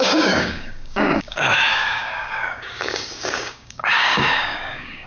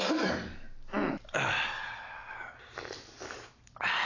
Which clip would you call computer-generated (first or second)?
first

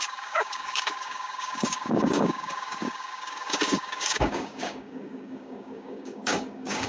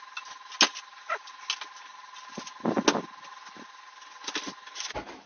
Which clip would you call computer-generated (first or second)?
first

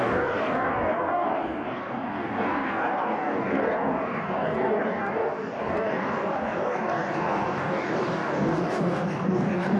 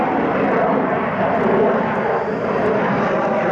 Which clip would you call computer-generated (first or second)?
first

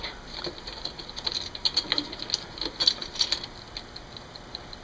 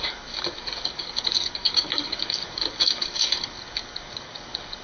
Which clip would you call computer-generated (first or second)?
second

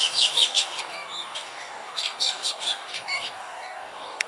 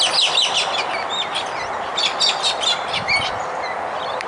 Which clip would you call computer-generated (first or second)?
first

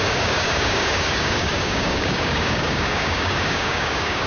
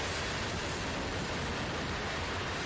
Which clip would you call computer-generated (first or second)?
first